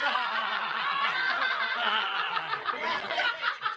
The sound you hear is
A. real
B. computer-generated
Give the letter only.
B